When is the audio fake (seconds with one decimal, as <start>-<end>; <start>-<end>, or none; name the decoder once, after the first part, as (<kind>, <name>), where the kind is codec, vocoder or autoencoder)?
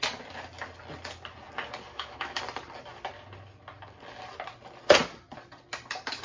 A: 1.9-2.4 (autoencoder, DAC-VAE)